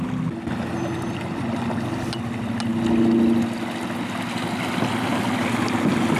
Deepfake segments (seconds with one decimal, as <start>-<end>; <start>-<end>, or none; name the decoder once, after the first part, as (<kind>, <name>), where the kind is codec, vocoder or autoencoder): none